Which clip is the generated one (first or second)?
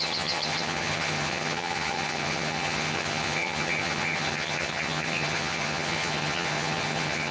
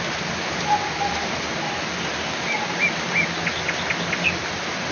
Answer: first